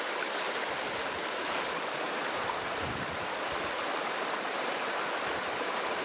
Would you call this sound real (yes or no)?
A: yes